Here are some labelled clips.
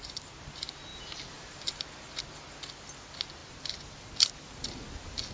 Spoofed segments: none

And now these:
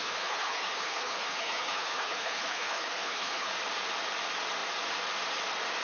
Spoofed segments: 0.0-3.5 (codec, HILCodec)

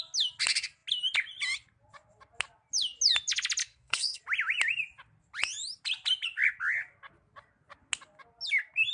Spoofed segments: 3.6-4.2 (codec, SNAC)

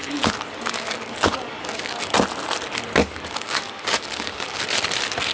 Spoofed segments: 0.0-2.1 (codec, DAC); 3.0-4.6